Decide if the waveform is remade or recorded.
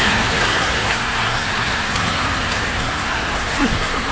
remade